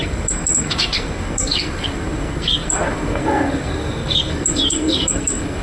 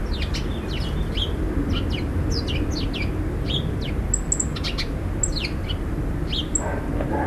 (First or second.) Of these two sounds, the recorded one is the second